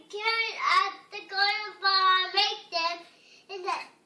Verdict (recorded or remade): remade